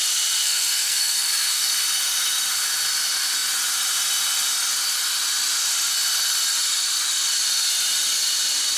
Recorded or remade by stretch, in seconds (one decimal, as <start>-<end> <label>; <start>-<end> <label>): 0.0-0.4 recorded; 0.4-1.7 remade; 1.7-8.8 recorded